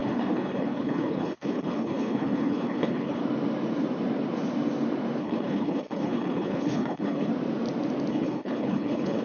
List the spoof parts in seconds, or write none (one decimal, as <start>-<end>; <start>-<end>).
0.0-3.2; 5.2-7.3; 8.1-9.2